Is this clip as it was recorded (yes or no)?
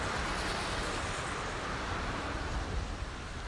yes